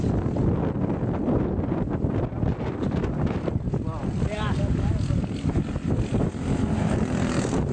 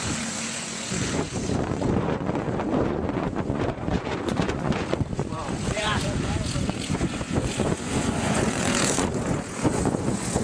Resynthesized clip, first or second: second